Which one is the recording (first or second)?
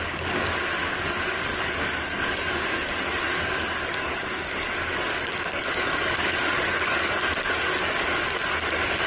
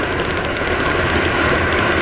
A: second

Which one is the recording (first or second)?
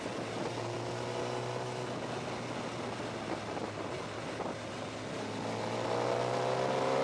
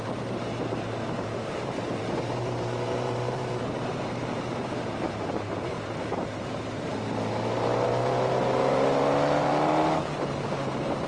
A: first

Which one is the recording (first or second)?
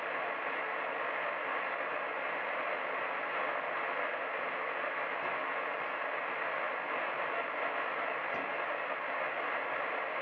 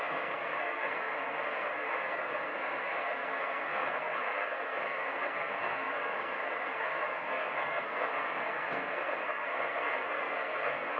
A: first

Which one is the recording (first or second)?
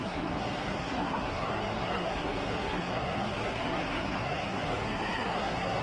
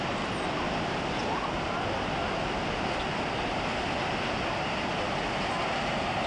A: second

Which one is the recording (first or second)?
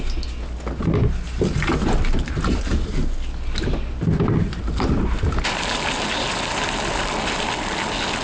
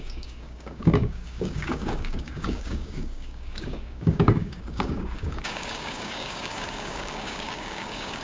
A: first